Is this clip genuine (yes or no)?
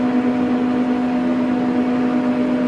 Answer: yes